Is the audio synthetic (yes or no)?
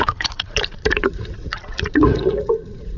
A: yes